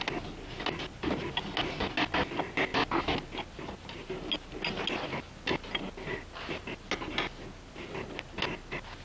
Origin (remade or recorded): recorded